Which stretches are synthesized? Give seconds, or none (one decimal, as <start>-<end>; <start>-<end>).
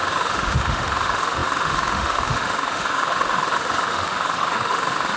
0.0-5.2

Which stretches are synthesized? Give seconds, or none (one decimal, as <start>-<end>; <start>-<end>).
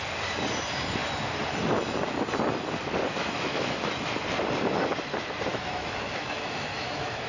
3.2-4.1; 5.5-7.3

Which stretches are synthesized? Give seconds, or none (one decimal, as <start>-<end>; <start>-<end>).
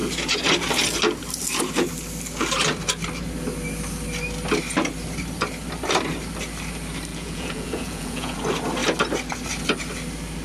7.1-8.4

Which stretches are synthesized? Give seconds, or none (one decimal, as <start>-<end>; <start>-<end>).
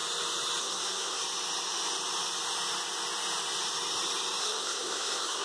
0.6-1.2; 4.4-5.4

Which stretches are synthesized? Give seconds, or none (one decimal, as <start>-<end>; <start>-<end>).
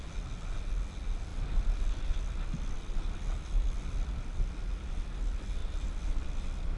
5.6-6.8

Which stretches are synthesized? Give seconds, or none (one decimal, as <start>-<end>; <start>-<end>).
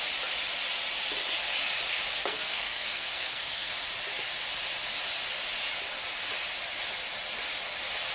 2.2-3.7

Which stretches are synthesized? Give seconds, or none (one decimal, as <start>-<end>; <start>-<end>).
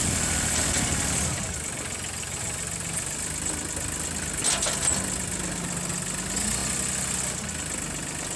none